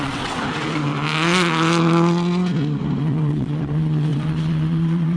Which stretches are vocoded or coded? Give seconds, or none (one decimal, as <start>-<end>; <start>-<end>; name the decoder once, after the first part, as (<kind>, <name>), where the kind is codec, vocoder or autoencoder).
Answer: 0.0-0.4 (vocoder, WaveNeXt); 3.0-5.2